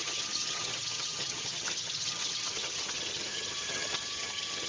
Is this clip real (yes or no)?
no